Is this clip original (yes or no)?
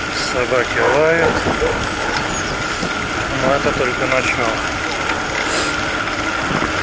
yes